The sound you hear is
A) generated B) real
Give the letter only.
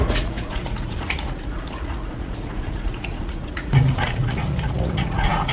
A